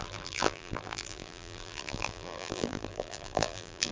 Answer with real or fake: fake